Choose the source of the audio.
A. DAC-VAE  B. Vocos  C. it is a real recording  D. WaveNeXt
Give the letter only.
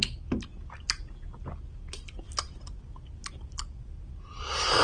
C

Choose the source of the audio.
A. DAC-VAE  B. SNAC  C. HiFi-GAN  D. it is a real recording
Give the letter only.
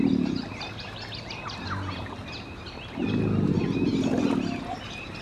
D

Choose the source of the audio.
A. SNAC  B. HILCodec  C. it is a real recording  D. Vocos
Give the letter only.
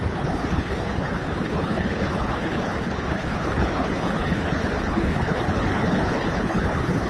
B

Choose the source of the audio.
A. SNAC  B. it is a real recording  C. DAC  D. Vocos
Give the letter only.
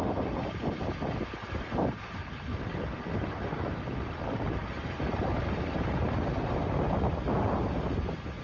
B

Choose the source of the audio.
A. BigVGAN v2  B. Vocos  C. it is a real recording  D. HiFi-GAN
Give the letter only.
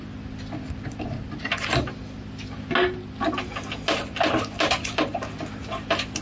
C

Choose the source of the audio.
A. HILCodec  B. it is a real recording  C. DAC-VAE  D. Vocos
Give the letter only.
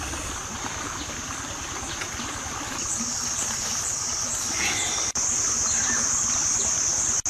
B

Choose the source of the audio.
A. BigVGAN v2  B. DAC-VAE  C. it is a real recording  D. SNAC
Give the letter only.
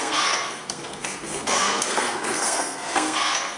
D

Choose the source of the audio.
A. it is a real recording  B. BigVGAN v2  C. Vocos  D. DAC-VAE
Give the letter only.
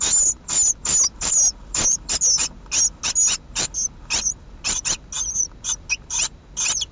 A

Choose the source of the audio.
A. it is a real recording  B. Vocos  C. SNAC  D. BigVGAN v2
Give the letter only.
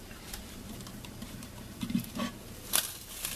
D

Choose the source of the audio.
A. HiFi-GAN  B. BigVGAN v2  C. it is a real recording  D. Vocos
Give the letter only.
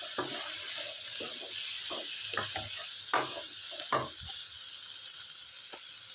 C